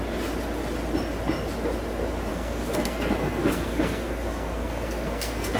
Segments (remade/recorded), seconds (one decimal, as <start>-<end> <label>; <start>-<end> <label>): 0.0-2.3 recorded; 2.3-5.6 remade